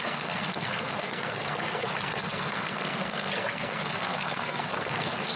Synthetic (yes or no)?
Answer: yes